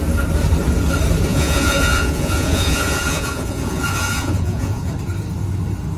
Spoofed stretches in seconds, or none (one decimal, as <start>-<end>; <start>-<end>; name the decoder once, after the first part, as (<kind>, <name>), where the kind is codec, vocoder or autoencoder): 1.3-4.9 (vocoder, Vocos)